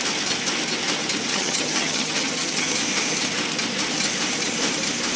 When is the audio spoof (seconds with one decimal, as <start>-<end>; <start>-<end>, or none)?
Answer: 1.3-2.7